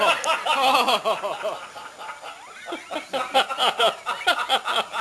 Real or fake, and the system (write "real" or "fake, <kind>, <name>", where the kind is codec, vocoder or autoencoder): real